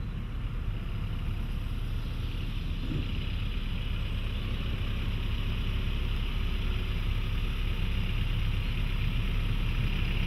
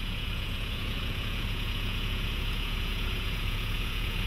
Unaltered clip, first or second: first